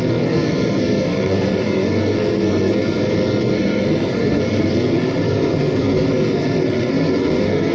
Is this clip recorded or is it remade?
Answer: remade